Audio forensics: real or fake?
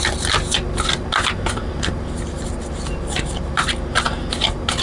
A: real